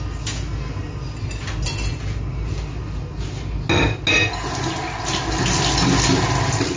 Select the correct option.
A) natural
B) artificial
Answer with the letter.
A